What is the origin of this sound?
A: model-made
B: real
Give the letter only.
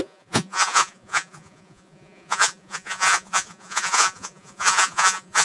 A